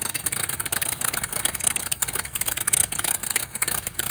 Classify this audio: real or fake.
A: fake